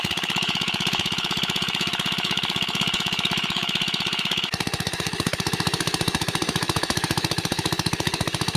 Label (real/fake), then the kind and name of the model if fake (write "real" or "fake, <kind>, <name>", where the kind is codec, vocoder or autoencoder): fake, autoencoder, DAC-VAE